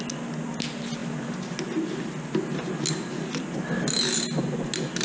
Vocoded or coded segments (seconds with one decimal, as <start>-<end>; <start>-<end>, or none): none